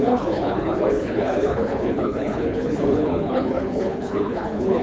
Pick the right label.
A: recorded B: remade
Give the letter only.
B